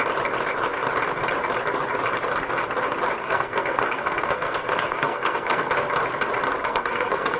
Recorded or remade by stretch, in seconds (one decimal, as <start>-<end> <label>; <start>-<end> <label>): 0.0-3.2 recorded; 3.2-5.7 remade; 5.7-6.6 recorded; 6.6-7.4 remade